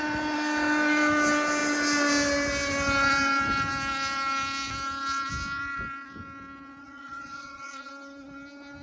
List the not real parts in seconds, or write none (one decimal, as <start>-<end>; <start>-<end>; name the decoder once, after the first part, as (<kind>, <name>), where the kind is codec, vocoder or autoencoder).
6.8-7.9 (vocoder, Vocos)